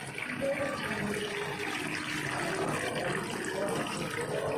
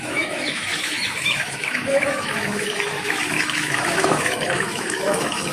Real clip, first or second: first